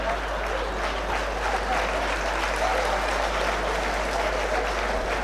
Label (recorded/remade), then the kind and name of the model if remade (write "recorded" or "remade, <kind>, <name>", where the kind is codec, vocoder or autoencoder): recorded